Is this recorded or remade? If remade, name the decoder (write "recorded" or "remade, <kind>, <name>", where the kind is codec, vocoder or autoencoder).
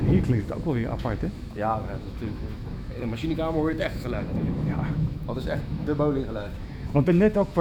remade, autoencoder, DAC-VAE